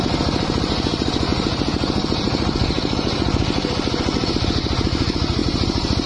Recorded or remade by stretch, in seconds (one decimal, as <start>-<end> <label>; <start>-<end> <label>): 0.0-6.1 recorded